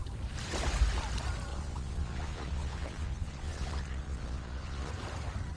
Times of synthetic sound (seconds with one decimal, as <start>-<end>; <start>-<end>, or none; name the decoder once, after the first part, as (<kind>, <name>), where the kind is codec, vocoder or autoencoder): 1.5-4.9 (vocoder, Vocos)